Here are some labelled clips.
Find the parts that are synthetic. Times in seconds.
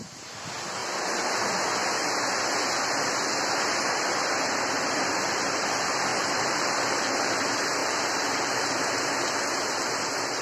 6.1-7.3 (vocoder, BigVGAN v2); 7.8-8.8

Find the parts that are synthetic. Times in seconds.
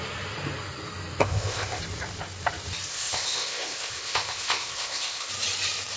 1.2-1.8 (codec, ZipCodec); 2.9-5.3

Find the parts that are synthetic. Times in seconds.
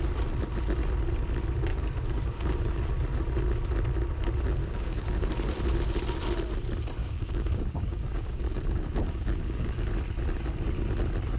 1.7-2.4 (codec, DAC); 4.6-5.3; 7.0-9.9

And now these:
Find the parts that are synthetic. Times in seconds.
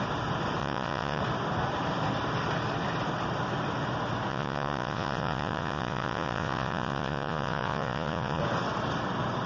0.6-1.2 (vocoder, Vocos); 4.3-8.4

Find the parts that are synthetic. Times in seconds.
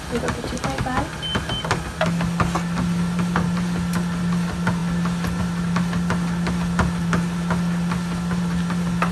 none